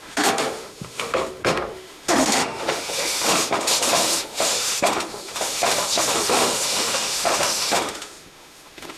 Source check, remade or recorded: remade